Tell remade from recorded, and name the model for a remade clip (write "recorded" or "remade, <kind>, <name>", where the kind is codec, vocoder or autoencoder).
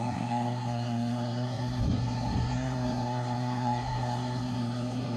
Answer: remade, codec, SNAC